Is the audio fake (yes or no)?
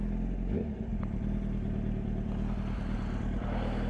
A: no